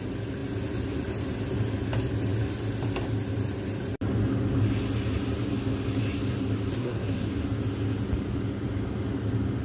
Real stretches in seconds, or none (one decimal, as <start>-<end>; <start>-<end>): 0.0-6.7; 7.3-9.6